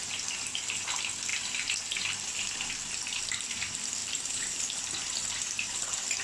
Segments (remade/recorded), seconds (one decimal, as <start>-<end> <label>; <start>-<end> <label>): 0.0-1.3 recorded; 1.3-3.2 remade; 3.2-4.0 recorded; 4.0-6.2 remade